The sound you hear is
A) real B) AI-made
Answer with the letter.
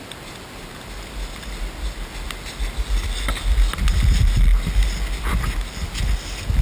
A